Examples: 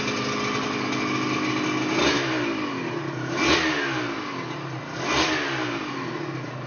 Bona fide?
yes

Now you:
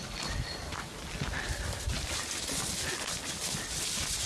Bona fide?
yes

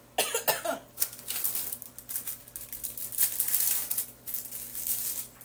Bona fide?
yes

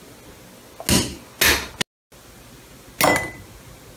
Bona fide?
yes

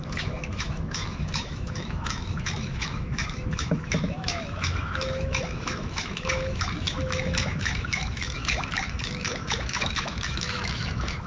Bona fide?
no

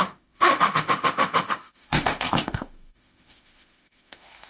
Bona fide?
no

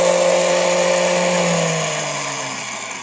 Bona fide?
yes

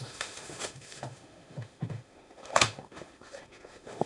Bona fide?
no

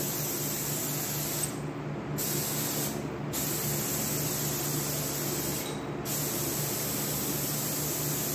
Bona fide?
yes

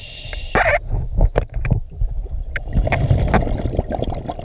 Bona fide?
yes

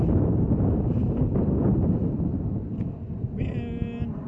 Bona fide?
yes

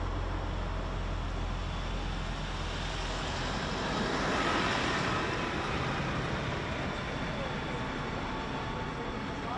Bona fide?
yes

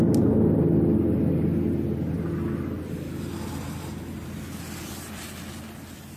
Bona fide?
yes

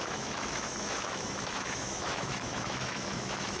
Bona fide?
no